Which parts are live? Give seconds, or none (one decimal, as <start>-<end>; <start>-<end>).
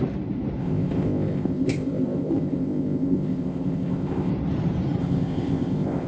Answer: 0.0-0.6; 4.3-5.0